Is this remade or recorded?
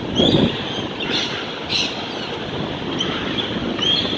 recorded